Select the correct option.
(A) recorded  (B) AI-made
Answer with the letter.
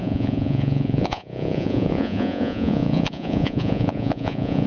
B